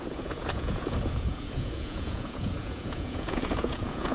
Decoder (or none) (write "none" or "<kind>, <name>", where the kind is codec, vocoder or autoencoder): vocoder, Vocos